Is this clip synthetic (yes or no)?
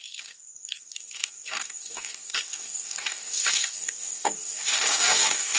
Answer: yes